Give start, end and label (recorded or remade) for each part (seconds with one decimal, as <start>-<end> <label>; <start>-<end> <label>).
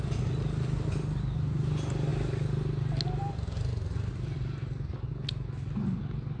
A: 0.0-6.4 recorded